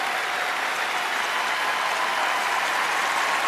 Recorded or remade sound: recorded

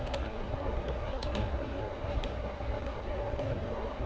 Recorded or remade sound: remade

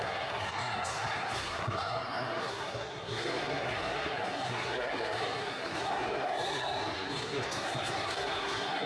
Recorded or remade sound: remade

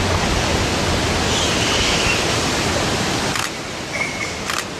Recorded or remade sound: recorded